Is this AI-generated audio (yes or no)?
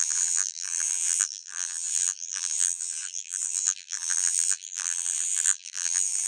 yes